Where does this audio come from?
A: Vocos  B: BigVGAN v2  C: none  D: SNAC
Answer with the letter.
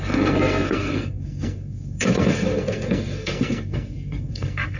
D